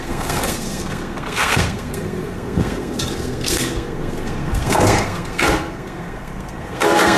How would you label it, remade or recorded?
remade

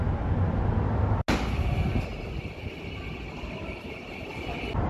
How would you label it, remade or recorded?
recorded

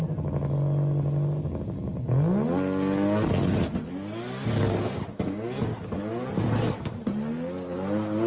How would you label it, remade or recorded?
recorded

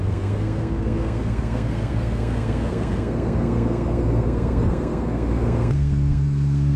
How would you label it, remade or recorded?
remade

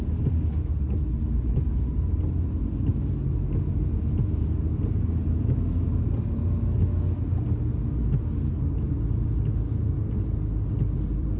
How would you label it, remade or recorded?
recorded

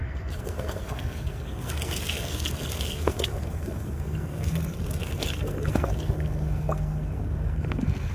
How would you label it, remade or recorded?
remade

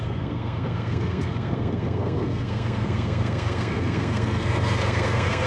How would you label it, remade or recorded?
remade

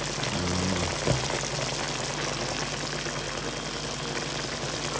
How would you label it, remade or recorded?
recorded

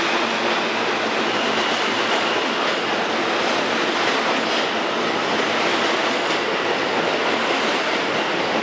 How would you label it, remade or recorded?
recorded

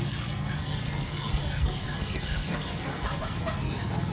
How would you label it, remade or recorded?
remade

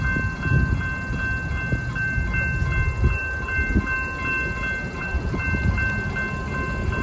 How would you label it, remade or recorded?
recorded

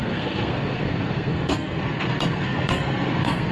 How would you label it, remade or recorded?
remade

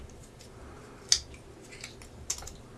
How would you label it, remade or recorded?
recorded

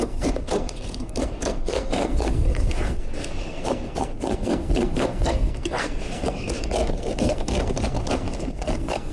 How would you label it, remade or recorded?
remade